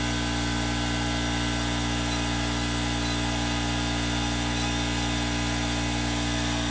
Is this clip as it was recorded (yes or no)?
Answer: yes